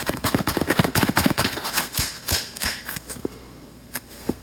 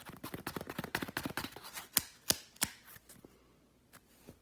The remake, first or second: first